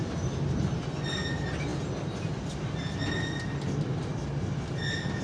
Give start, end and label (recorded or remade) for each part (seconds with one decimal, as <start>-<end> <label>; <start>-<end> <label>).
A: 0.0-5.2 recorded